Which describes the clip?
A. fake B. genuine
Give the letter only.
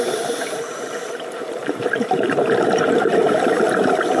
A